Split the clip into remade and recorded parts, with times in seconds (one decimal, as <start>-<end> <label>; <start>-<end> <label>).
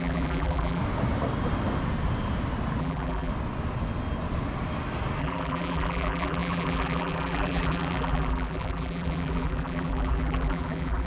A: 0.0-0.8 remade; 0.8-2.8 recorded; 2.8-3.3 remade; 3.3-5.2 recorded; 5.2-11.1 remade